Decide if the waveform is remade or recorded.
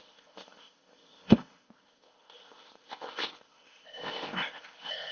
remade